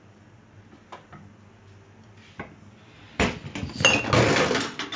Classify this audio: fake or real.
real